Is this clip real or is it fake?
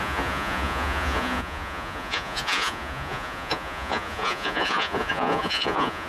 fake